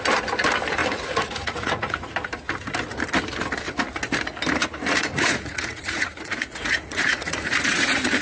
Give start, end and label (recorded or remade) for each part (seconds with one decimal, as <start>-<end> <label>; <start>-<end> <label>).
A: 0.0-0.8 recorded; 0.8-2.1 remade; 2.1-4.6 recorded; 4.6-8.2 remade